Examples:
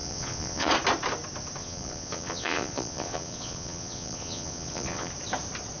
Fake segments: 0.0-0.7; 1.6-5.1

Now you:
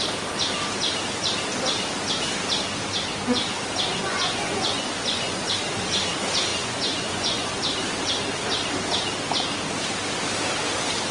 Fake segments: 3.9-5.4; 6.5-7.5

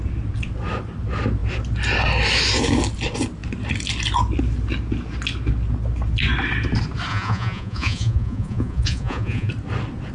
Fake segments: 7.1-9.5

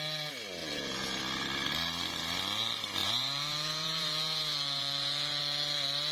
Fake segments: 0.6-1.2; 3.0-5.4